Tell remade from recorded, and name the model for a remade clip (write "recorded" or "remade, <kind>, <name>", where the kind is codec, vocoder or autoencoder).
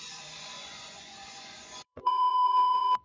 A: remade, vocoder, Vocos